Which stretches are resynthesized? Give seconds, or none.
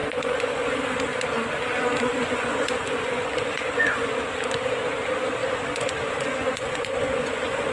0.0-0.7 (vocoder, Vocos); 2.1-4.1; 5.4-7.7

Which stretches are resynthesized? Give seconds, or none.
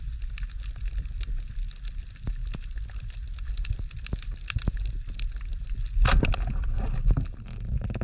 none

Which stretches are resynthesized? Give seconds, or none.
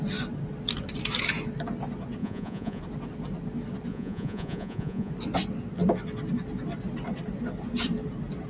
2.2-2.8 (vocoder, Vocos); 3.9-5.1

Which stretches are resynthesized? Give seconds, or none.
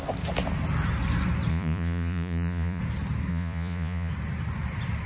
1.5-2.8 (vocoder, Vocos); 3.3-4.1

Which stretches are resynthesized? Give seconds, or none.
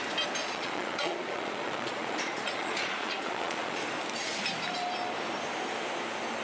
0.4-3.8 (vocoder, Vocos)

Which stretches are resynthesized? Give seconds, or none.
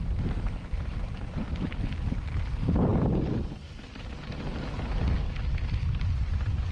none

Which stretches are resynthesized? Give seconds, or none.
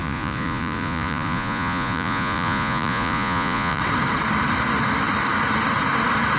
0.0-3.8 (vocoder, Vocos)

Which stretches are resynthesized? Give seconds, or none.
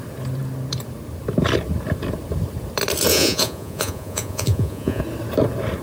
3.1-5.0 (vocoder, Vocos)